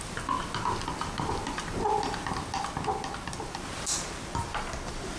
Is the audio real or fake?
real